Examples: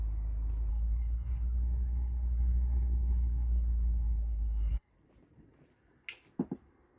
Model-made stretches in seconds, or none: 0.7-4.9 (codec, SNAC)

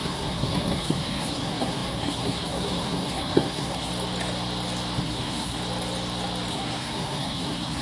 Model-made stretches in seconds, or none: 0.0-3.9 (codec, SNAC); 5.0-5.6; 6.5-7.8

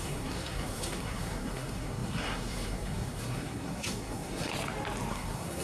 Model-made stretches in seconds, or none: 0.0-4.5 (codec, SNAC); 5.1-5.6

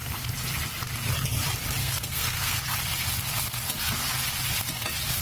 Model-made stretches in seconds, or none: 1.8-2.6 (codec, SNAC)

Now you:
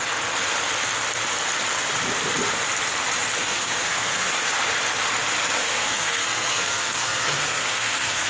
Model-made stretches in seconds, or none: 3.4-4.3 (codec, SNAC); 5.6-8.3

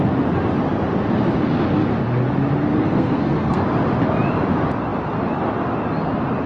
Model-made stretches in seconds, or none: 2.7-3.6 (codec, SNAC)

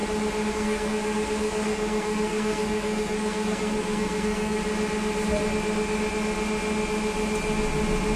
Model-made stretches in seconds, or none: 0.5-4.6 (codec, SNAC)